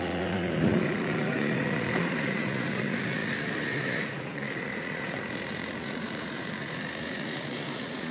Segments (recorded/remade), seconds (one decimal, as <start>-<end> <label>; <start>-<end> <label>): 0.0-8.1 remade